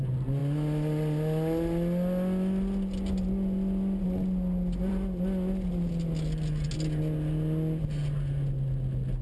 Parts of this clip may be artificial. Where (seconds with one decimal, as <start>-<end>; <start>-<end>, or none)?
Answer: none